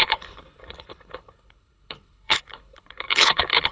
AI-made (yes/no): yes